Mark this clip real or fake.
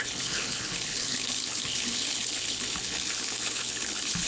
fake